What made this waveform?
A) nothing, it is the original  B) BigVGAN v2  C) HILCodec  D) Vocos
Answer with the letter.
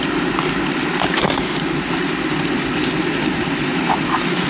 A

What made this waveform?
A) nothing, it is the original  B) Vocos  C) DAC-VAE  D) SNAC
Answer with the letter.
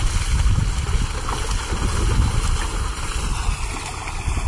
A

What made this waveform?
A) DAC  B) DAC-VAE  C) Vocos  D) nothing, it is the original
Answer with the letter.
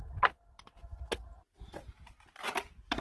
D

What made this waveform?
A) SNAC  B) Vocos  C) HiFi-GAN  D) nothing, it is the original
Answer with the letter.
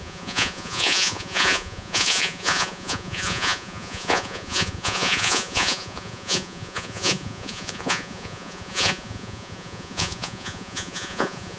B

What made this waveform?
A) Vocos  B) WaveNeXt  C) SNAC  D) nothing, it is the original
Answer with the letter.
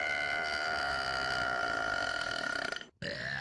D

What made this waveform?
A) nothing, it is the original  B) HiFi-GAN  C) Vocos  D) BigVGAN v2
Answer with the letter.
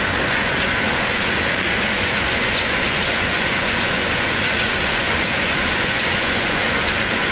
C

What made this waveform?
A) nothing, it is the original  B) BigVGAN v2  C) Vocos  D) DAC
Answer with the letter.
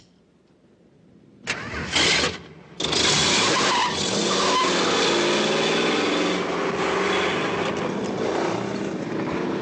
A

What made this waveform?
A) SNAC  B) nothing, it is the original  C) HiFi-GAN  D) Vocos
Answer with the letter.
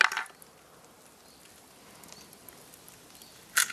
B